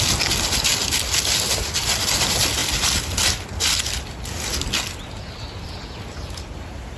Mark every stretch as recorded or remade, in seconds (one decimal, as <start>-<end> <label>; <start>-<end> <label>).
0.0-7.0 recorded